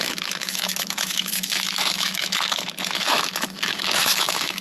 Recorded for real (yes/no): no